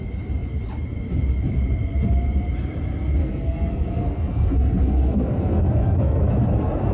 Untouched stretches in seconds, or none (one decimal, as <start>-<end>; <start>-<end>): 0.0-3.2; 6.3-6.9